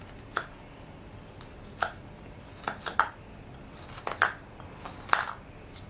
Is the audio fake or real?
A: real